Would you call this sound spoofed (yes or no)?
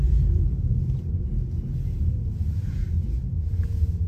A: yes